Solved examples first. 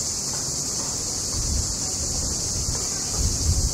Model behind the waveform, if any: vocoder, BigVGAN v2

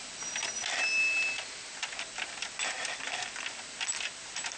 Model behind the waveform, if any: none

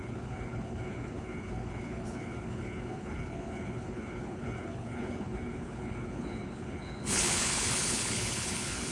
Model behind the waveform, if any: codec, HILCodec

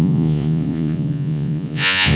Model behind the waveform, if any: vocoder, Vocos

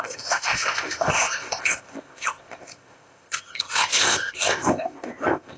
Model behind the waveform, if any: codec, ZipCodec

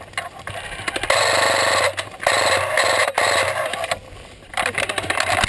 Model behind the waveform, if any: none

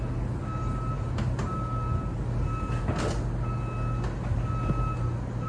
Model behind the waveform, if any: none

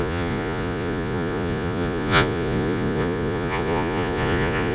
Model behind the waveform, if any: vocoder, Vocos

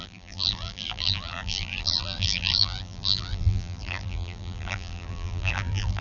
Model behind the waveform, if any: vocoder, BigVGAN v2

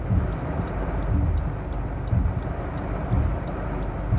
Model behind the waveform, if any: none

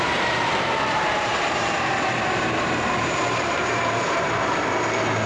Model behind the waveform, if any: vocoder, BigVGAN v2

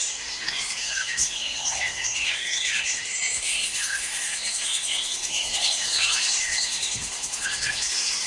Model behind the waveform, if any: codec, SNAC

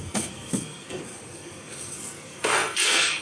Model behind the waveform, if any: codec, SNAC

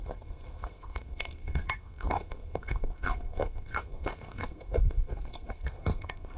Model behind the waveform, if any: codec, SNAC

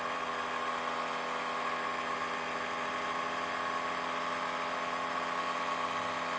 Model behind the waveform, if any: vocoder, BigVGAN v2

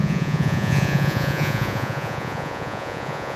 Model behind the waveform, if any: vocoder, Vocos